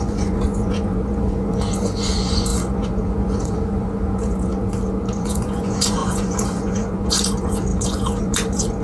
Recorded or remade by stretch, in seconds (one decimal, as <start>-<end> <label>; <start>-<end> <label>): 0.0-4.5 remade; 4.5-5.1 recorded; 5.1-8.8 remade

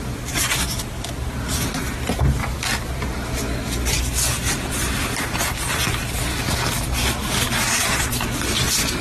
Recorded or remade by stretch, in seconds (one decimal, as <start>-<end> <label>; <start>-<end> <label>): 0.0-2.4 recorded; 2.4-2.9 remade; 2.9-6.3 recorded; 6.3-7.8 remade; 7.8-9.0 recorded

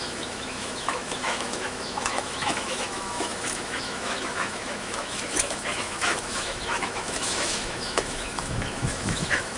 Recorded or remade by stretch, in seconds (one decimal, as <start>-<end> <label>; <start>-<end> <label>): 0.0-9.6 remade

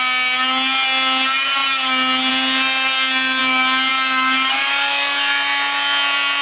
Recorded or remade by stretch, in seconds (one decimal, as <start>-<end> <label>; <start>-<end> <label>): 0.0-6.4 recorded

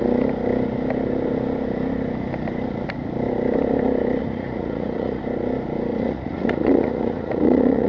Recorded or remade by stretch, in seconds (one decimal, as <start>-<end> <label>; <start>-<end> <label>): 0.0-4.2 recorded; 4.2-5.2 remade; 5.2-5.9 recorded; 5.9-7.9 remade

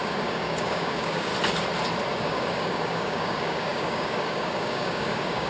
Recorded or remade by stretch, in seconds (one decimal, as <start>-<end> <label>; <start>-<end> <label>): 0.0-1.3 remade; 1.3-2.2 recorded; 2.2-5.5 remade

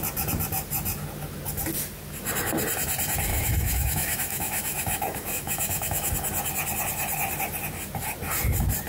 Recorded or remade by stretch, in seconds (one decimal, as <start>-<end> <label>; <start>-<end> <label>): 0.0-3.3 recorded; 3.3-6.1 remade; 6.1-8.9 recorded